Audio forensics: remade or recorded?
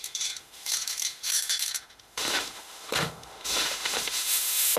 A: remade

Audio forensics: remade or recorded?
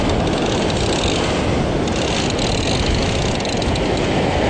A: recorded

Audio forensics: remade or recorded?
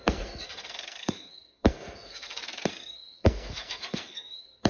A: remade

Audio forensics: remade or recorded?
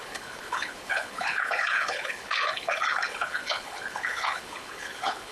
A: remade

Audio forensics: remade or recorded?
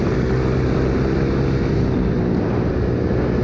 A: recorded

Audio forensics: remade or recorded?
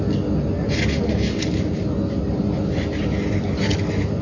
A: recorded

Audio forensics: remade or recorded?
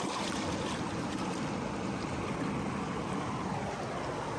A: recorded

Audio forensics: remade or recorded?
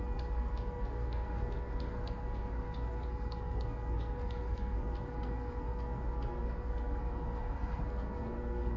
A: remade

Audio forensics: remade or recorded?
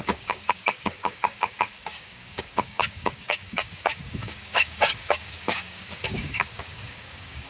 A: remade